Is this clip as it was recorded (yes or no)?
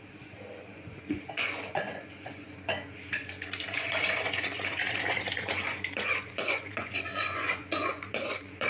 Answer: no